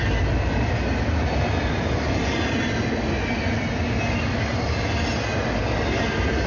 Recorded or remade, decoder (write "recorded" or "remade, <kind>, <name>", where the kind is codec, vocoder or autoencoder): recorded